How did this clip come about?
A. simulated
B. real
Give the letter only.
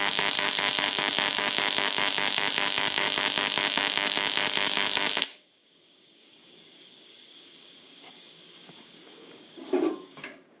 A